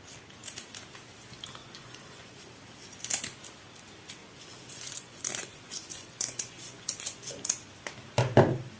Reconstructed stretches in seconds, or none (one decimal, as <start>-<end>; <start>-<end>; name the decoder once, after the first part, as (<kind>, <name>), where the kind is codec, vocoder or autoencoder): 1.6-2.4 (vocoder, Vocos); 4.2-7.4